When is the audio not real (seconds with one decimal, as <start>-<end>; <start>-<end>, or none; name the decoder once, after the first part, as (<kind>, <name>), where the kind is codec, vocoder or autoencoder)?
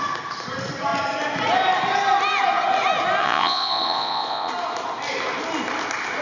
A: 3.2-4.5 (vocoder, Vocos)